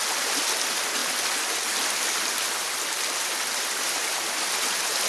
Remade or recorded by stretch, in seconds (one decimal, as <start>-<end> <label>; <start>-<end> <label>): 0.0-5.1 recorded